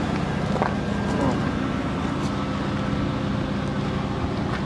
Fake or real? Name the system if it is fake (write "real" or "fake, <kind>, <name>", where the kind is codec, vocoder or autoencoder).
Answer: real